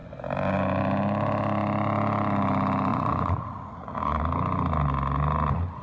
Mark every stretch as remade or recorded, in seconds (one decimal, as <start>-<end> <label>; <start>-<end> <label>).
0.0-2.9 recorded; 2.9-4.2 remade; 4.2-5.8 recorded